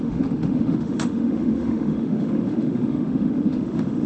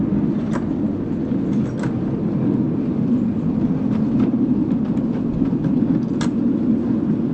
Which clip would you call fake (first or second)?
first